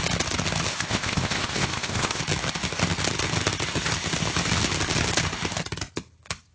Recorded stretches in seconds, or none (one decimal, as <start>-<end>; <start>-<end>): 0.0-0.7; 2.2-6.5